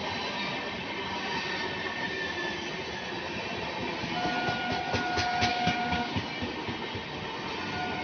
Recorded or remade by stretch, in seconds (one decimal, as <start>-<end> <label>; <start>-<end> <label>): 0.0-5.5 recorded; 5.5-6.1 remade; 6.1-8.0 recorded